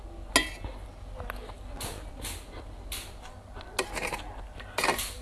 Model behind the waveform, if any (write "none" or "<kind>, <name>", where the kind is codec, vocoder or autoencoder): none